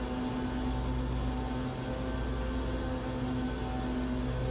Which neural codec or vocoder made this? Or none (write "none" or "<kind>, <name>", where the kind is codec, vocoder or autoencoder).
none